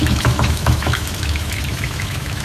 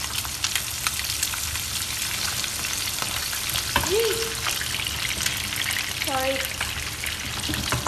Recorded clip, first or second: second